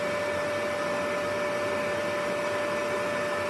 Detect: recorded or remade recorded